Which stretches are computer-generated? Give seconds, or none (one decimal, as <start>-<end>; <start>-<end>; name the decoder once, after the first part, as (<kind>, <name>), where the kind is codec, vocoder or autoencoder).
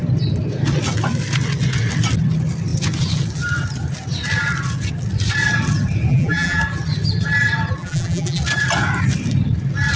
6.1-6.6 (vocoder, BigVGAN v2); 7.8-8.4